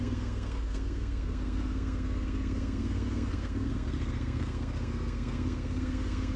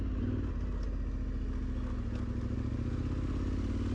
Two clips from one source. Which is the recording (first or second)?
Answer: second